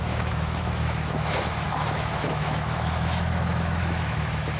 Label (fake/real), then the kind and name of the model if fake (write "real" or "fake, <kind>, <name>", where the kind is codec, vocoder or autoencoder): fake, autoencoder, DAC-VAE